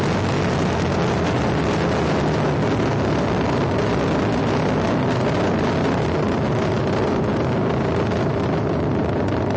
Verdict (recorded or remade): recorded